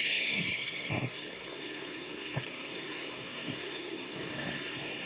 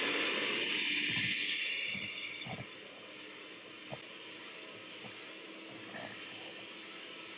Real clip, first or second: second